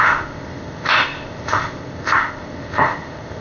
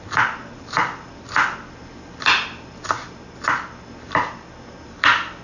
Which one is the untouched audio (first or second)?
second